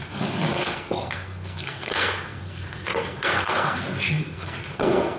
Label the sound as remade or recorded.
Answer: remade